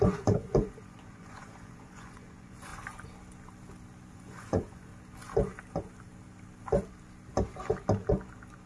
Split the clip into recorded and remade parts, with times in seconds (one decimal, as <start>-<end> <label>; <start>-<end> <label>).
0.0-2.7 remade; 2.7-4.1 recorded; 4.1-4.9 remade; 4.9-8.7 recorded